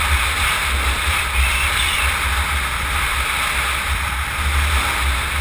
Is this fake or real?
real